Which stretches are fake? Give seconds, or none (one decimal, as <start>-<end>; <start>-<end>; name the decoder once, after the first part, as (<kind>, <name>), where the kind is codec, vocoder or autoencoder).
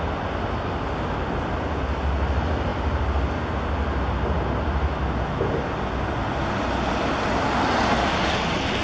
none